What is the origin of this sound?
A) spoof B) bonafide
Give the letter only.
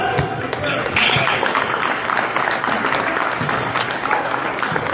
A